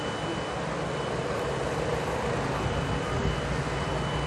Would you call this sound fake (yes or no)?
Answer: no